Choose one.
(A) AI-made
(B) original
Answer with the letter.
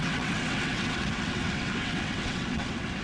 A